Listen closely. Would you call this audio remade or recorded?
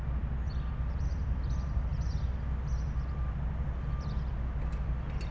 recorded